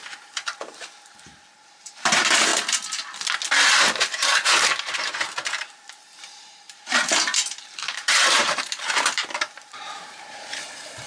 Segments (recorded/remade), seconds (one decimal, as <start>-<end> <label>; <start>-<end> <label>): 0.0-2.5 remade; 2.5-4.1 recorded; 4.1-11.1 remade